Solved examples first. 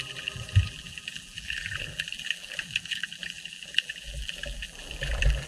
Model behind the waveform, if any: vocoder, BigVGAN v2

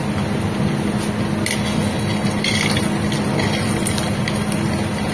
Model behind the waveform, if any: none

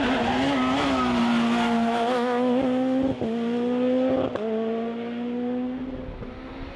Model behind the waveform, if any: none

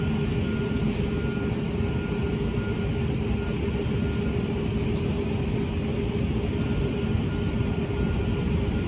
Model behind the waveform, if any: none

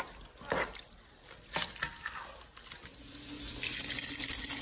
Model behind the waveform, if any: none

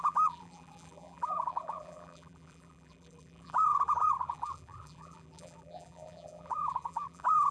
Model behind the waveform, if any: vocoder, BigVGAN v2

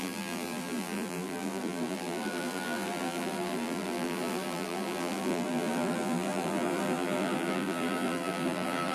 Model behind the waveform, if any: vocoder, BigVGAN v2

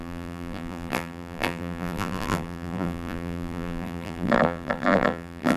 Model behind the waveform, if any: vocoder, BigVGAN v2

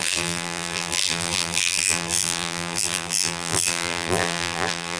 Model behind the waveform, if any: vocoder, BigVGAN v2